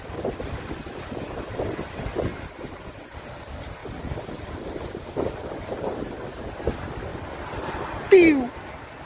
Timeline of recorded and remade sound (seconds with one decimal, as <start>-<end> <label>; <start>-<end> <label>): 0.0-2.3 recorded; 2.3-3.2 remade; 3.2-3.8 recorded; 3.8-5.7 remade; 5.7-7.1 recorded; 7.1-7.7 remade; 7.7-9.1 recorded